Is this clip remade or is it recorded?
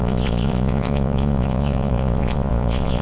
remade